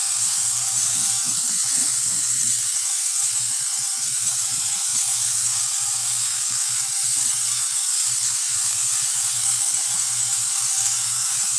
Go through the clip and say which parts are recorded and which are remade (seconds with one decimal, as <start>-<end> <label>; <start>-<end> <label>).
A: 0.0-11.6 remade